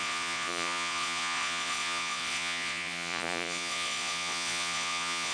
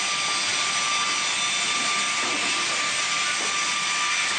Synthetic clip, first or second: first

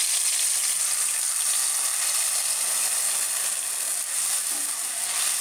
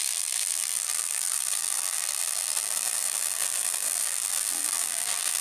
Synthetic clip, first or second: second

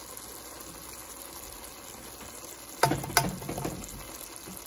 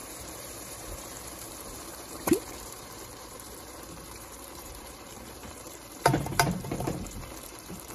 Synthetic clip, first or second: second